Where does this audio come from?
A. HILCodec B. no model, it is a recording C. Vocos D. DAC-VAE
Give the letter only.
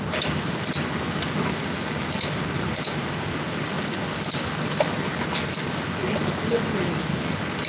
B